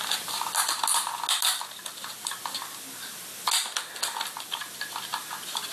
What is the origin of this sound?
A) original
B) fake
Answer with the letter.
A